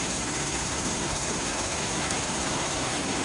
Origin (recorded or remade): remade